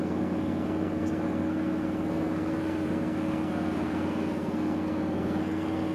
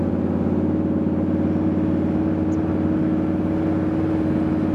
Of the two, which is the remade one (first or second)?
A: first